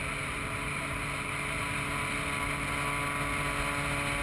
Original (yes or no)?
yes